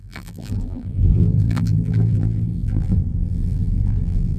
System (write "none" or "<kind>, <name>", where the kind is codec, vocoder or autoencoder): vocoder, BigVGAN v2